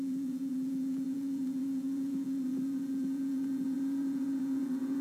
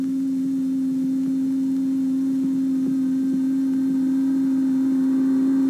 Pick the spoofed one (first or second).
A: first